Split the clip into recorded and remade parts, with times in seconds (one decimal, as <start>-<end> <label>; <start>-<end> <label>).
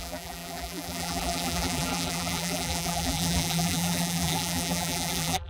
0.0-5.5 remade